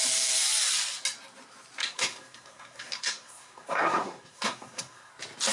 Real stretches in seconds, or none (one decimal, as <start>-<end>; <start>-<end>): 0.0-1.8; 5.1-5.5